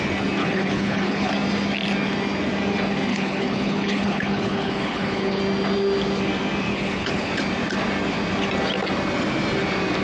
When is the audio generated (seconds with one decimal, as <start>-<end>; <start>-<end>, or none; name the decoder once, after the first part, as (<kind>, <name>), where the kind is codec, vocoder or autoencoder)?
0.4-1.3 (codec, HILCodec); 3.1-5.4; 6.7-7.3